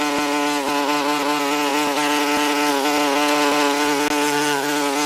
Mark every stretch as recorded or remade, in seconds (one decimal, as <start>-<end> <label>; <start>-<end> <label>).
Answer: 0.0-5.1 recorded